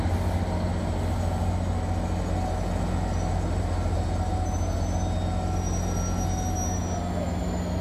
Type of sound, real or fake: real